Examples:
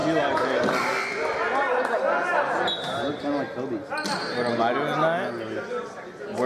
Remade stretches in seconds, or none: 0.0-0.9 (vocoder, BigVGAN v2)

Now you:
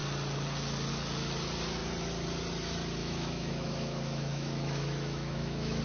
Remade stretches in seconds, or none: 3.0-5.8 (autoencoder, DAC-VAE)

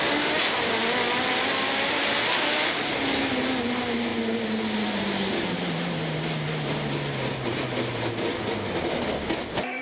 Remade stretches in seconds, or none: none

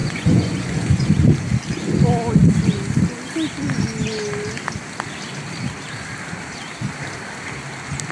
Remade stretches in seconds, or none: 0.0-1.1 (vocoder, Vocos)